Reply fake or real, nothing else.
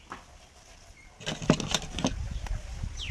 real